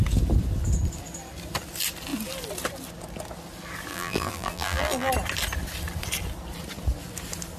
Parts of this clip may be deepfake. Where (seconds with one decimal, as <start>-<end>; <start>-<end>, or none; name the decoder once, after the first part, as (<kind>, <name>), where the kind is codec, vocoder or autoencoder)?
3.9-5.1 (vocoder, BigVGAN v2)